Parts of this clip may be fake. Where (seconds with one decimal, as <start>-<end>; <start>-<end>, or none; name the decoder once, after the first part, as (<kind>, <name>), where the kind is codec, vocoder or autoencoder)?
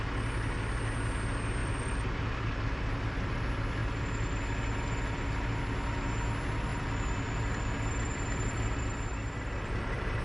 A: 1.6-3.4 (vocoder, BigVGAN v2); 3.8-4.4; 6.7-10.2